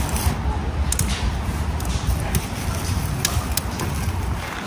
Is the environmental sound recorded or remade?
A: recorded